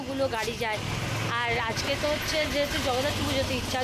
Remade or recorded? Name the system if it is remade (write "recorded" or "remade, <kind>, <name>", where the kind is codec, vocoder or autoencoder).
recorded